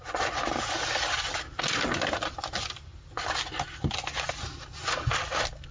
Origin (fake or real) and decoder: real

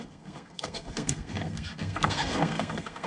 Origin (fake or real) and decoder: fake, codec, SNAC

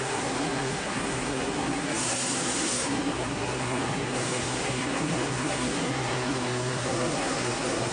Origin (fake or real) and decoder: fake, codec, SNAC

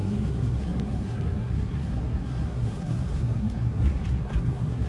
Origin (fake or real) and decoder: fake, codec, SNAC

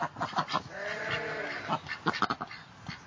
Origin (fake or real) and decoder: real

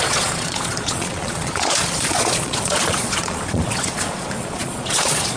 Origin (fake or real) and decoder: fake, vocoder, Vocos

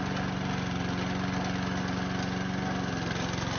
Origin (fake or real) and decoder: real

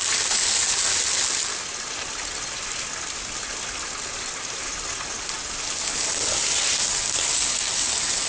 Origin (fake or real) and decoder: real